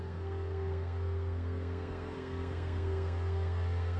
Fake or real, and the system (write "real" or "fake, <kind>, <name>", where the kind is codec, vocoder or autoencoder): fake, codec, SNAC